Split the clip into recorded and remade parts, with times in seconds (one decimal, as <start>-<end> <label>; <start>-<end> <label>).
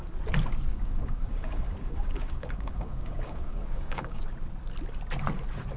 0.0-0.7 recorded; 0.7-4.2 remade; 4.2-5.8 recorded